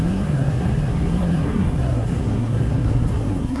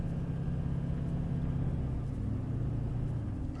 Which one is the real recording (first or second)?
second